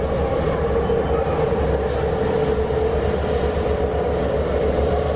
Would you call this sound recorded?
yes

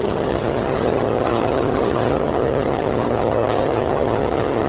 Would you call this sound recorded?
no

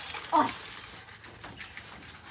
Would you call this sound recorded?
yes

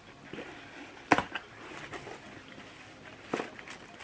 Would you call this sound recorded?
yes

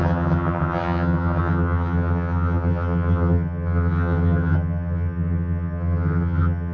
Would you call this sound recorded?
no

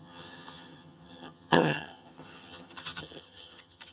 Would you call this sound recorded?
no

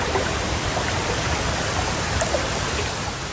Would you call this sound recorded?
yes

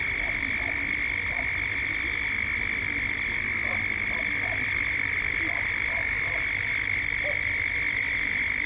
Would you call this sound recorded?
yes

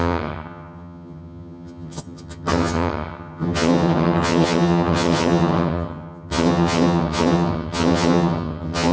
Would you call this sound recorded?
no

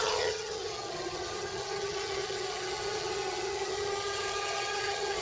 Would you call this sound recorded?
no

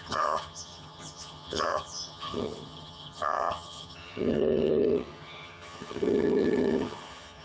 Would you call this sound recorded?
no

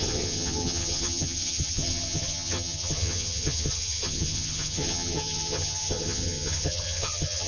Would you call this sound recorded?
no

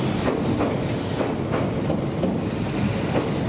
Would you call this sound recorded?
yes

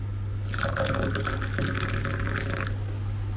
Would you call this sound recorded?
yes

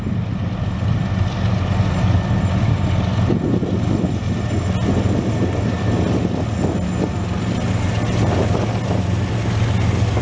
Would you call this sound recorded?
yes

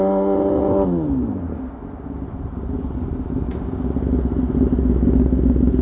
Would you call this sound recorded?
yes